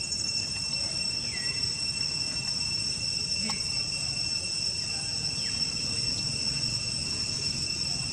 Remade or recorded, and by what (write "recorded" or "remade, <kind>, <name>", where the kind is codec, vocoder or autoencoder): recorded